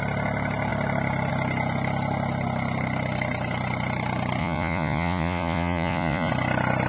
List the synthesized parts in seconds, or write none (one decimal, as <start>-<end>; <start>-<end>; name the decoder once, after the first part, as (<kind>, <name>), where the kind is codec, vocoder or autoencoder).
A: 4.4-6.3 (vocoder, Vocos)